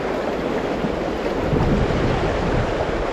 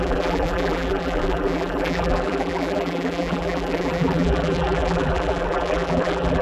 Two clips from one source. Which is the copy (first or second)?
second